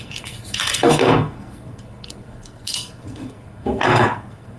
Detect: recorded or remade remade